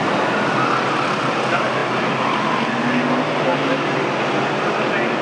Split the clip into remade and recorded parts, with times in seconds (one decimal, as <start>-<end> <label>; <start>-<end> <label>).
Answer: 0.0-5.2 recorded